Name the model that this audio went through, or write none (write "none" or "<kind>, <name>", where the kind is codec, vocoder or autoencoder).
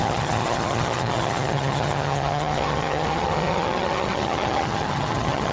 vocoder, HiFi-GAN